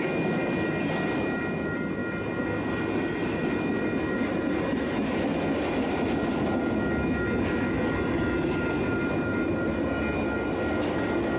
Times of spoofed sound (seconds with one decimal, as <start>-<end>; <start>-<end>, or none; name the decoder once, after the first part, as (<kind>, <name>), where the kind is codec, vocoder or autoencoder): none